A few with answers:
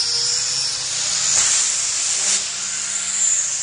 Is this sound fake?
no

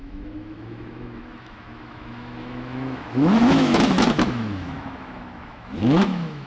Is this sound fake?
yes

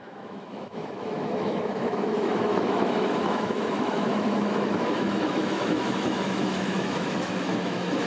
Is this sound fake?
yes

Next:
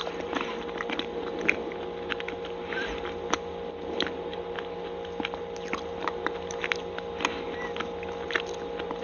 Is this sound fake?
no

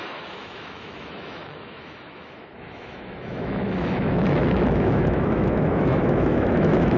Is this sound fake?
yes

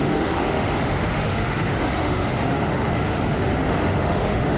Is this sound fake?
yes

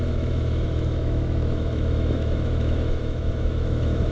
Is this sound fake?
yes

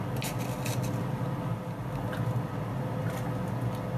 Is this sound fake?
no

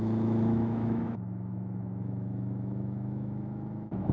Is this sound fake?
yes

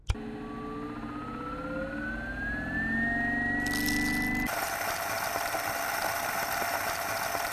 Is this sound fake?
no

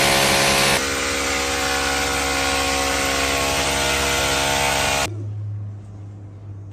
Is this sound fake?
no